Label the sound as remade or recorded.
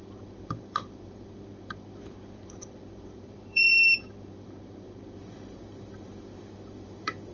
remade